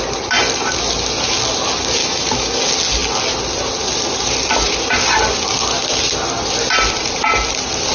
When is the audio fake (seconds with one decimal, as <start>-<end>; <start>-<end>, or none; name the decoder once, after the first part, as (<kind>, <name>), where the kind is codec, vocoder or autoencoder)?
2.0-2.6 (autoencoder, DAC-VAE)

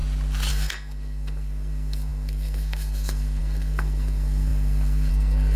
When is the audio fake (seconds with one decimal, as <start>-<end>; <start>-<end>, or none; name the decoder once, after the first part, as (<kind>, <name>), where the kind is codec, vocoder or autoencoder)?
0.5-5.6 (codec, SNAC)

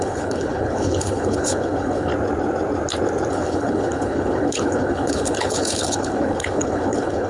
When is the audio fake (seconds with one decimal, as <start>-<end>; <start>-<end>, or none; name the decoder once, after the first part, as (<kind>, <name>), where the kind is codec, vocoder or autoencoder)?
0.0-2.1 (codec, HILCodec); 3.3-7.3

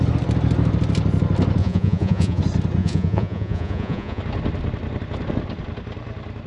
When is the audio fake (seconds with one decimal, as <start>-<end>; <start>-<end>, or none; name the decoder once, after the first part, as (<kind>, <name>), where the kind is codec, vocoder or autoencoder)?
1.6-2.4 (vocoder, Vocos); 2.8-4.2